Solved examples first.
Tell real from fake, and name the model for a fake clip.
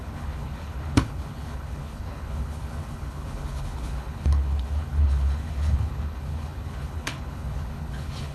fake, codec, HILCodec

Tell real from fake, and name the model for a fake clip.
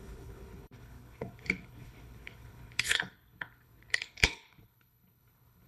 fake, codec, HILCodec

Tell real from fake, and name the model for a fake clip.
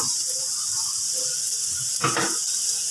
real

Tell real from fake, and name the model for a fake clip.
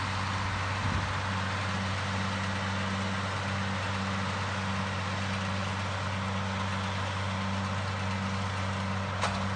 real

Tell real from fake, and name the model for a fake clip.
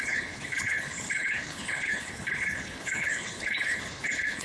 fake, codec, HILCodec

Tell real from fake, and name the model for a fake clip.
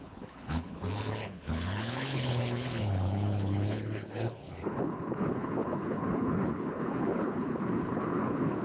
fake, codec, HILCodec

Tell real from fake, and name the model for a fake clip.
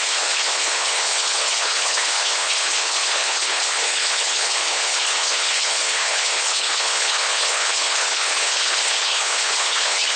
fake, codec, HILCodec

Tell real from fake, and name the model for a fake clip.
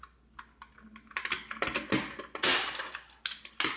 real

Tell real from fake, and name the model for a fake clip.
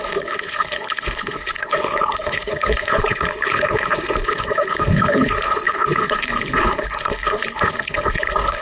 fake, codec, HILCodec